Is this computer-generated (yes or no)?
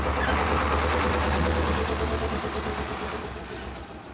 no